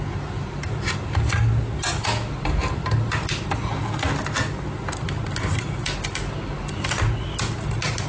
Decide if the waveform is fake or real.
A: real